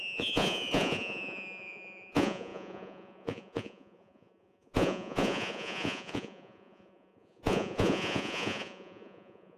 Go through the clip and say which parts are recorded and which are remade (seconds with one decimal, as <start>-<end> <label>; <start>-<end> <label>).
0.0-9.6 remade